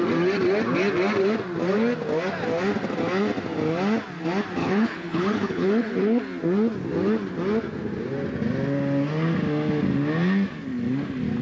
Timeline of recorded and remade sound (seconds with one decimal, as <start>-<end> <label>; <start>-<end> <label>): 0.0-4.6 recorded; 4.6-6.2 remade; 6.2-11.4 recorded